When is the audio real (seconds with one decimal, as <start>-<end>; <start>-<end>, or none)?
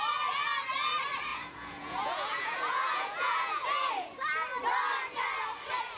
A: 0.0-1.3; 3.9-6.0